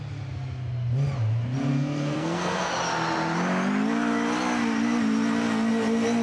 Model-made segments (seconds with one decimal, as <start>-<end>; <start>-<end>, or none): 1.7-2.7